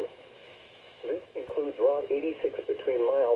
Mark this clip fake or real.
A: fake